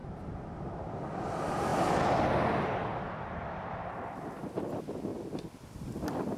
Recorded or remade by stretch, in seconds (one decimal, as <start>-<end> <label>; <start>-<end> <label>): 0.0-0.6 remade; 0.6-5.1 recorded; 5.1-5.9 remade; 5.9-6.4 recorded